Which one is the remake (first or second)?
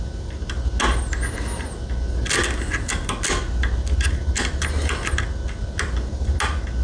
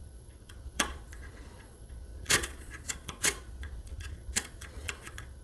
second